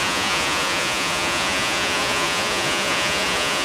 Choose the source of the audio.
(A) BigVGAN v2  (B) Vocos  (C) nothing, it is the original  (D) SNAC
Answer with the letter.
B